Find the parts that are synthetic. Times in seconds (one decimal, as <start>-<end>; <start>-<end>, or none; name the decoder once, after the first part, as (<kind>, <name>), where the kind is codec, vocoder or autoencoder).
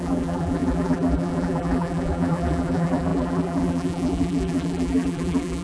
0.0-5.6 (vocoder, BigVGAN v2)